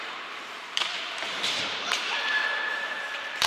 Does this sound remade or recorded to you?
remade